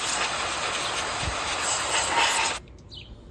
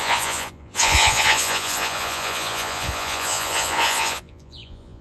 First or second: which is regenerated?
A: second